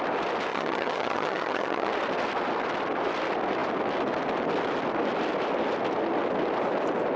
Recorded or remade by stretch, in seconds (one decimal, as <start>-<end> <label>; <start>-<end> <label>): 0.0-0.5 recorded; 0.5-1.9 remade; 1.9-7.2 recorded